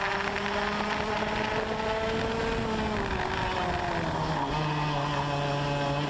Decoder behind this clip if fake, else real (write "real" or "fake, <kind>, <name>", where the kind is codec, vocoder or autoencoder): real